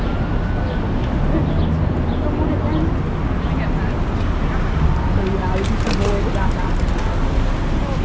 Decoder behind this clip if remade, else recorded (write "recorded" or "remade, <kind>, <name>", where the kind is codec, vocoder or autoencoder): recorded